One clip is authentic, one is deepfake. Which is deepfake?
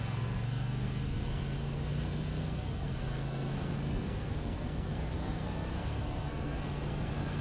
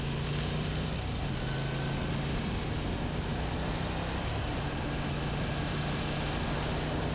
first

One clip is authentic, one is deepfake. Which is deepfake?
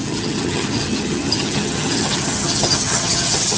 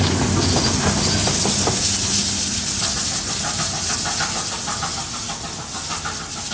first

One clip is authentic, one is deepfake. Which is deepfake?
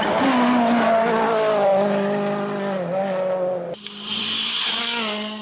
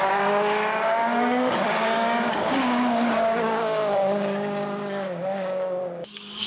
second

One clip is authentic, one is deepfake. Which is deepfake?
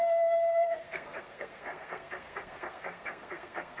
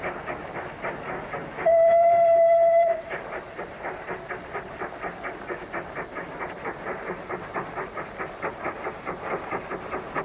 first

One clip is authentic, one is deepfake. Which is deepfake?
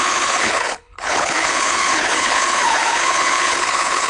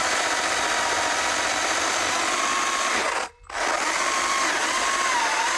first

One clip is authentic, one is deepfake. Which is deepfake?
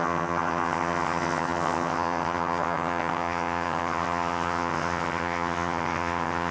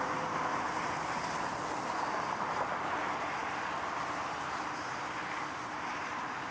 first